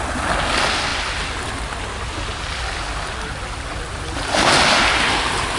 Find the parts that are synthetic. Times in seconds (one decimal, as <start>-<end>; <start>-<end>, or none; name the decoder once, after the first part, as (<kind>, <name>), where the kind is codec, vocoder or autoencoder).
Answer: none